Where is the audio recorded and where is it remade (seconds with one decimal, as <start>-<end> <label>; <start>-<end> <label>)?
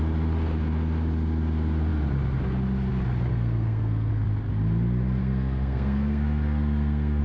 0.0-3.3 recorded; 3.3-4.1 remade; 4.1-5.2 recorded; 5.2-7.2 remade